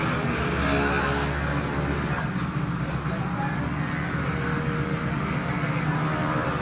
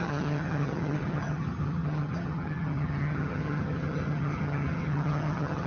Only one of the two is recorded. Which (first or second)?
first